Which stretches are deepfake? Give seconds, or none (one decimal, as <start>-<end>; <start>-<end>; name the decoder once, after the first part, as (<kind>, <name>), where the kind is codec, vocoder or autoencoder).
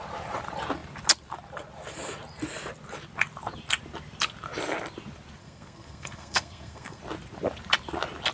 5.4-7.0 (codec, SNAC)